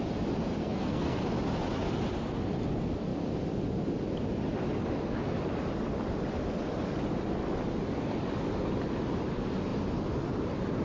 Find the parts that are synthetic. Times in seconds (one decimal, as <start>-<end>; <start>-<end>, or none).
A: 0.6-1.2